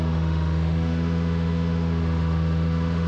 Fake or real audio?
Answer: fake